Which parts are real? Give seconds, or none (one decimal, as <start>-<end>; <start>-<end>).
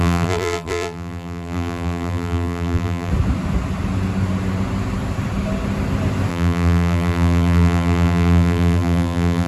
3.1-6.3